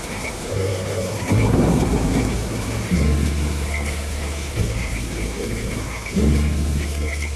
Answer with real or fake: fake